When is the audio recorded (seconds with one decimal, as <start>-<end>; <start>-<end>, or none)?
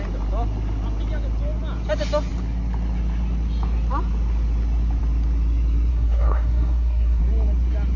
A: 0.0-5.9; 7.2-8.0